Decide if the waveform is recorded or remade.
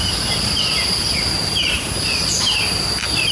recorded